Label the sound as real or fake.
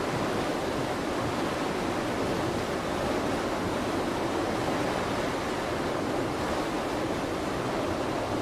real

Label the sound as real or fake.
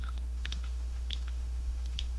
fake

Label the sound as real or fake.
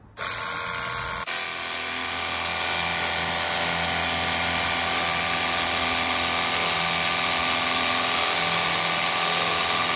real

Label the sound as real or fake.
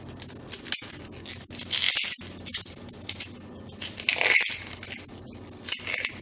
real